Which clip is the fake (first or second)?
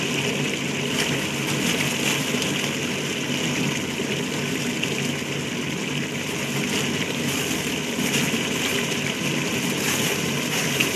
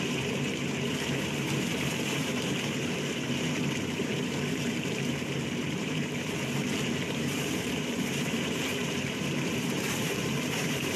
second